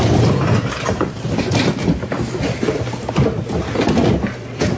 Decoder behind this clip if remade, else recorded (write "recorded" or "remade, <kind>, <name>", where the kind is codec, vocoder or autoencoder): remade, vocoder, BigVGAN v2